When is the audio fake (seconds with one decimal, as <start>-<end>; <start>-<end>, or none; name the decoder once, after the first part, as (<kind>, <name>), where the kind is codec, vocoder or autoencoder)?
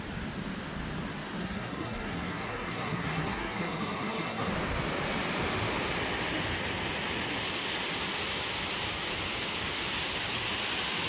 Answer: 1.4-4.5 (codec, SNAC)